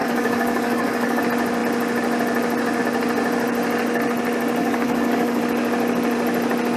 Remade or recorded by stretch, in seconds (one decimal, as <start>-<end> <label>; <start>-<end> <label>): 0.0-1.2 remade; 1.2-4.6 recorded; 4.6-5.4 remade; 5.4-6.8 recorded